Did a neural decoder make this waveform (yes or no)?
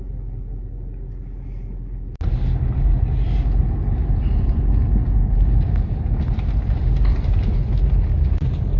no